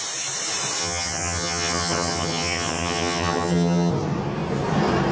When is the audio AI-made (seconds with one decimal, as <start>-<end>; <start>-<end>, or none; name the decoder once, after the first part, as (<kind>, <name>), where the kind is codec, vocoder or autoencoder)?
0.8-3.9 (vocoder, HiFi-GAN)